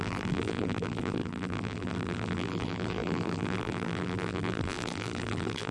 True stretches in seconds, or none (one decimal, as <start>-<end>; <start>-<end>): none